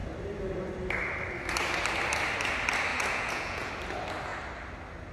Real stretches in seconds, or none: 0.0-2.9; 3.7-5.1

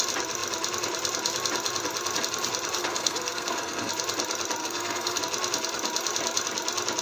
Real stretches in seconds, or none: 0.0-2.8; 3.9-4.6; 5.2-7.0